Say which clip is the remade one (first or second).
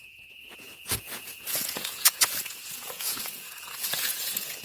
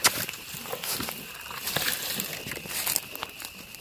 first